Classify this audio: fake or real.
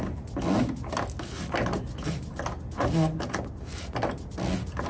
real